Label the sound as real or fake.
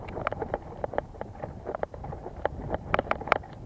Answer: fake